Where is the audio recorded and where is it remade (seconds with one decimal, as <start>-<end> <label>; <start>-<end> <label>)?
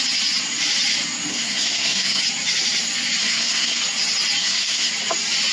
0.0-1.3 recorded; 1.3-2.2 remade; 2.2-3.2 recorded; 3.2-3.8 remade; 3.8-4.4 recorded; 4.4-4.9 remade; 4.9-5.5 recorded